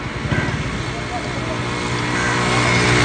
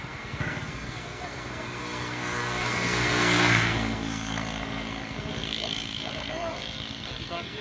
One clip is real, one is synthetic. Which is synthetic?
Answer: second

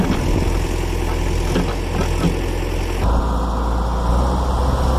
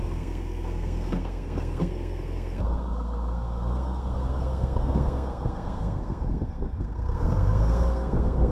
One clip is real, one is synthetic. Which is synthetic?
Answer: second